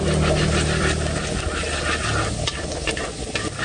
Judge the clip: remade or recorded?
recorded